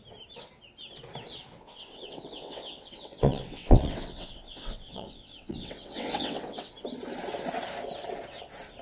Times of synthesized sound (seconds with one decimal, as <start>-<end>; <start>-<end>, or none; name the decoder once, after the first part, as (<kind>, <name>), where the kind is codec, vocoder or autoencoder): 1.5-6.7 (vocoder, WaveNeXt)